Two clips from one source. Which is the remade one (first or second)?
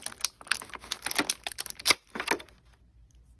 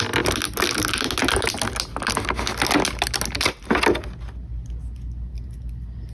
first